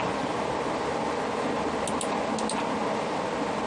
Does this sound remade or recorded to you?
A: recorded